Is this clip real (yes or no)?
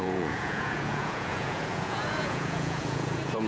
no